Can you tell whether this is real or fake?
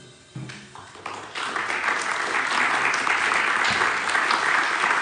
real